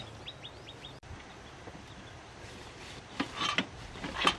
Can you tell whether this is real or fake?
real